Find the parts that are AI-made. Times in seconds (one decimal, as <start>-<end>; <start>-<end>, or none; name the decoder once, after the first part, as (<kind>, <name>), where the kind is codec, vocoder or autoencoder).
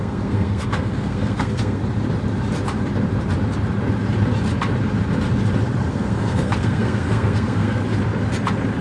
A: 0.0-1.8 (codec, SNAC); 5.9-7.8